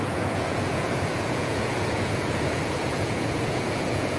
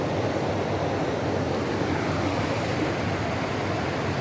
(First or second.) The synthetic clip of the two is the first